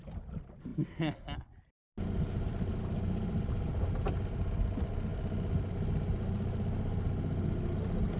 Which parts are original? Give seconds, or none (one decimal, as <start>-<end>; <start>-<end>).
0.0-8.2